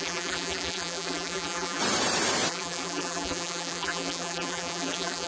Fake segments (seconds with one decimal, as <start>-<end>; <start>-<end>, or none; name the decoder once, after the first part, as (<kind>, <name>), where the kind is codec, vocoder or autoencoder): 0.0-1.8 (vocoder, BigVGAN v2); 2.5-5.3